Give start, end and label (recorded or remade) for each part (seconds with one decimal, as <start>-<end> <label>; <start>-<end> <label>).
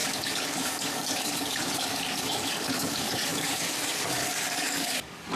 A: 0.0-5.4 remade